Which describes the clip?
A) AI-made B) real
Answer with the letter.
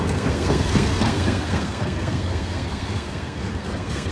A